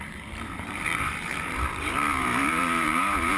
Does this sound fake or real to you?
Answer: fake